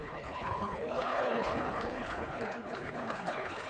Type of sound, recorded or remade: remade